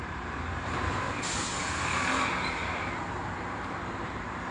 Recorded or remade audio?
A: remade